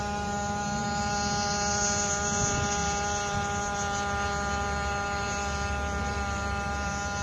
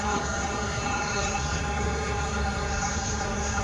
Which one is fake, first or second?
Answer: second